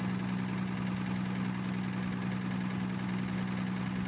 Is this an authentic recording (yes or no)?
yes